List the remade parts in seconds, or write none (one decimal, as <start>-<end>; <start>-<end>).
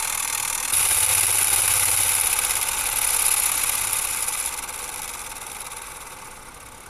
none